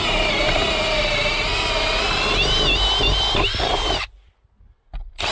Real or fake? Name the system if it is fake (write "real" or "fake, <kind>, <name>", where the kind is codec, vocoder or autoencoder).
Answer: real